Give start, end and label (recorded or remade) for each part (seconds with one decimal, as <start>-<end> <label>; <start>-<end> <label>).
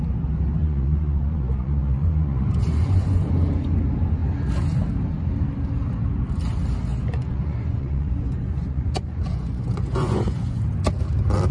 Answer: 0.0-0.6 recorded; 0.6-3.3 remade; 3.3-6.9 recorded; 6.9-10.6 remade; 10.6-11.5 recorded